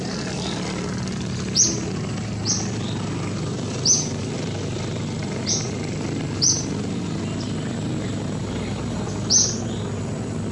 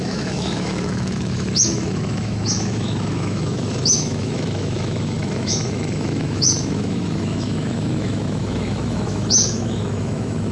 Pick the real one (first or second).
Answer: first